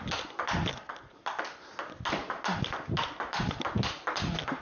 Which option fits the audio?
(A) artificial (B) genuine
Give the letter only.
B